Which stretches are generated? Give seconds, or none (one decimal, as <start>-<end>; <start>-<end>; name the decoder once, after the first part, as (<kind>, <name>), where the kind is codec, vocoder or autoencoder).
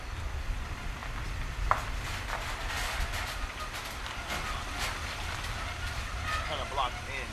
none